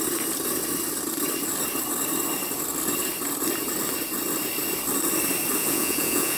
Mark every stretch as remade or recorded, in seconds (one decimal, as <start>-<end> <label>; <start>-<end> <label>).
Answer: 0.0-5.6 recorded; 5.6-6.4 remade